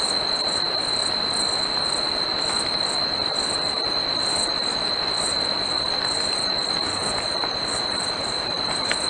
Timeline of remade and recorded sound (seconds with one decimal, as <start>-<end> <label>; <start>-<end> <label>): 0.0-9.1 recorded